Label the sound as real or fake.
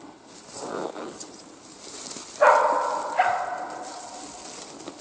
real